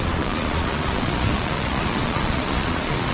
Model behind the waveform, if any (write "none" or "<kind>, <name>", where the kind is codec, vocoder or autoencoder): vocoder, Vocos